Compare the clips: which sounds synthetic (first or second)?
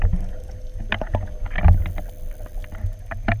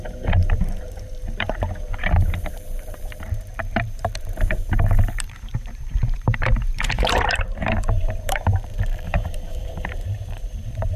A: second